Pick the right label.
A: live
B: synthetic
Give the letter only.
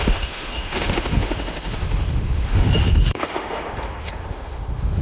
B